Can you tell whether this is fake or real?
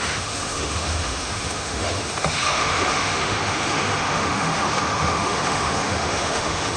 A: fake